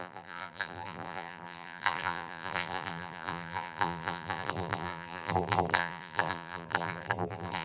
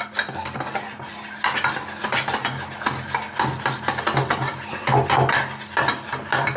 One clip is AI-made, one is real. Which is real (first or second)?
second